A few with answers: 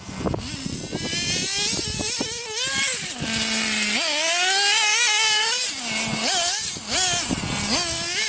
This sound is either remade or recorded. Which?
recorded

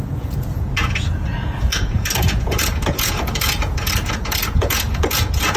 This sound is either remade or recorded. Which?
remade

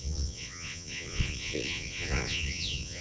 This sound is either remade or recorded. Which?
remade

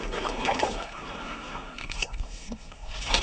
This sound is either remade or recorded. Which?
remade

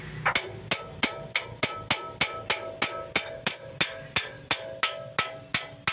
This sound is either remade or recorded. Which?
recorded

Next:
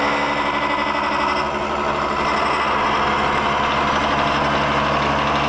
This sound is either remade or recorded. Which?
recorded